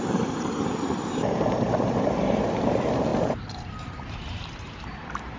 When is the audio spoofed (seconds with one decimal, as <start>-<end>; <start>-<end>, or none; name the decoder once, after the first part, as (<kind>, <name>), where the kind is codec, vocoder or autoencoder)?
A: 0.0-5.4 (vocoder, BigVGAN v2)